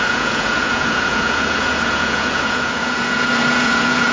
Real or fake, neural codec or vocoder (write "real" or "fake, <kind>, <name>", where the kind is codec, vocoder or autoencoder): fake, vocoder, Vocos